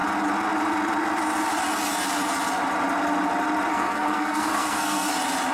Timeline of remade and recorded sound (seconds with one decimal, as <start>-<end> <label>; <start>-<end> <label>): 0.0-3.7 recorded; 3.7-5.1 remade; 5.1-5.5 recorded